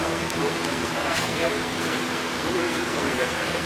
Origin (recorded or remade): remade